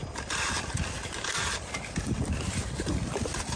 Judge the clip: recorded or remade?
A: recorded